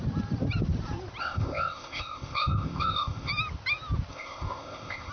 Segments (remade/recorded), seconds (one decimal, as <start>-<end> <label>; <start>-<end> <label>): 0.0-1.2 recorded; 1.2-3.3 remade; 3.3-4.1 recorded; 4.1-5.1 remade